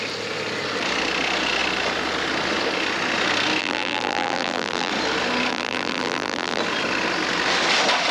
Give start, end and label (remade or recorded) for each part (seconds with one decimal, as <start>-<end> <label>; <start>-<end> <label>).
0.0-3.6 recorded; 3.6-4.9 remade; 4.9-5.5 recorded; 5.5-6.6 remade; 6.6-8.1 recorded